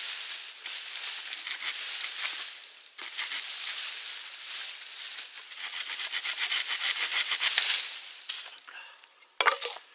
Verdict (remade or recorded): recorded